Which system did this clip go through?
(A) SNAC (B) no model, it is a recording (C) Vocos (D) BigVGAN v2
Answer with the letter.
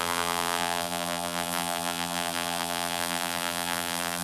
D